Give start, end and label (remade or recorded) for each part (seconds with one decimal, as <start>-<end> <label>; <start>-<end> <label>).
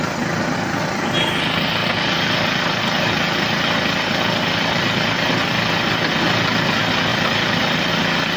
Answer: 0.0-7.1 recorded; 7.1-7.9 remade; 7.9-8.4 recorded